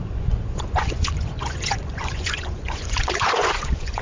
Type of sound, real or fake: fake